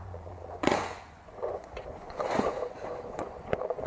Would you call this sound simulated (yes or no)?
yes